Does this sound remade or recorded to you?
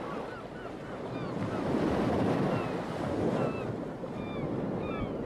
recorded